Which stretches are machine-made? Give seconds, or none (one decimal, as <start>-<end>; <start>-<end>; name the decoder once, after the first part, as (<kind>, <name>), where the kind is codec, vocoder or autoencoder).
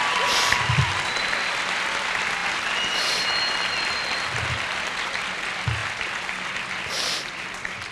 none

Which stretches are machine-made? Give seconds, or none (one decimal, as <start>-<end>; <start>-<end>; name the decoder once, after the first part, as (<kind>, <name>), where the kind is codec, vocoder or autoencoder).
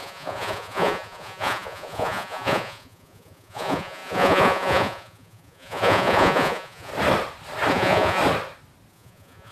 0.0-6.9 (vocoder, Vocos); 7.7-8.2; 8.9-9.5